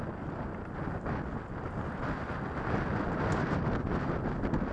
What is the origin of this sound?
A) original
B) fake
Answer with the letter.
A